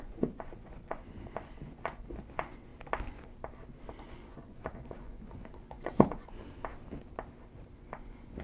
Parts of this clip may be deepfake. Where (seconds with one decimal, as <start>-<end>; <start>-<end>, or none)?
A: 0.0-2.7; 4.0-6.4; 7.8-8.4